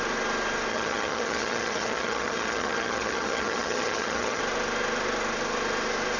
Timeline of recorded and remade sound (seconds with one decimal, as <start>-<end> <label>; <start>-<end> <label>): 0.0-0.7 recorded; 0.7-4.4 remade; 4.4-6.2 recorded